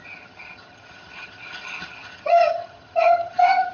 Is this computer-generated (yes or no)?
yes